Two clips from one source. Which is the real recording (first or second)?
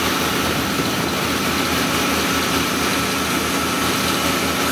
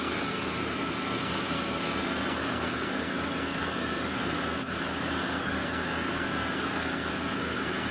first